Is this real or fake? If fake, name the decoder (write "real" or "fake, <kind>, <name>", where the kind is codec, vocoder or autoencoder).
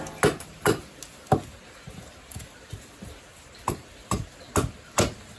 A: real